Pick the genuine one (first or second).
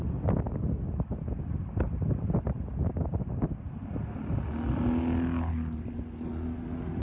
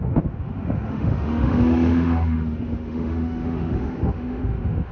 first